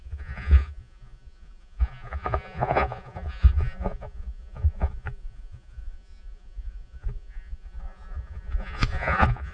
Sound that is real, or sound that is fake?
fake